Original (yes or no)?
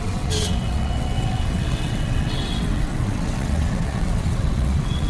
no